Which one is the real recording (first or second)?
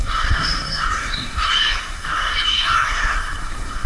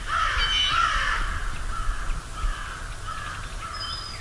second